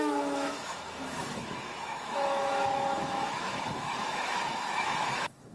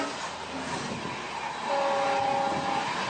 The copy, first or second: first